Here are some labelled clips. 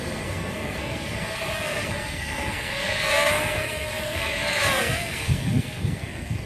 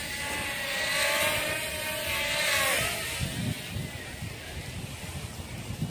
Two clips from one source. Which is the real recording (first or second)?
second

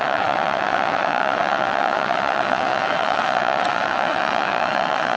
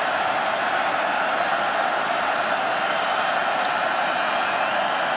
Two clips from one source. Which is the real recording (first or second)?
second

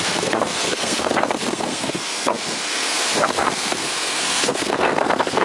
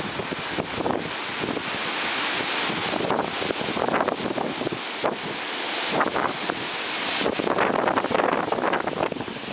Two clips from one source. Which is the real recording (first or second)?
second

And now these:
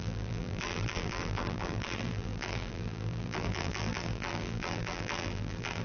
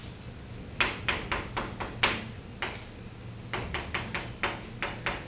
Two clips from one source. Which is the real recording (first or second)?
second